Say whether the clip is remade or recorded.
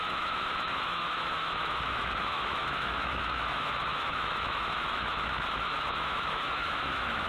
remade